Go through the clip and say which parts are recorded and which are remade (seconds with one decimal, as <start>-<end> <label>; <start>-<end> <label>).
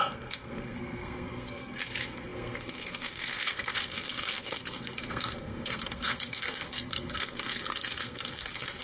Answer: 0.0-8.8 remade